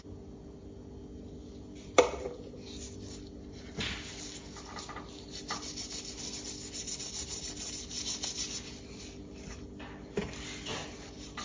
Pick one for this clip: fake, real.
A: real